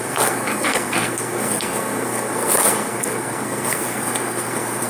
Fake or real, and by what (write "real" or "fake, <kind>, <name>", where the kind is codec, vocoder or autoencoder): fake, codec, SNAC